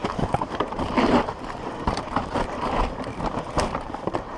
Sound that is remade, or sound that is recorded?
remade